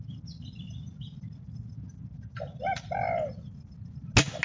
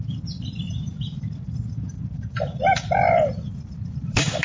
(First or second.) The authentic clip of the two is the first